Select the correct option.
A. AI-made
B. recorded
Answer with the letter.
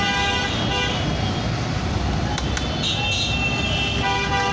B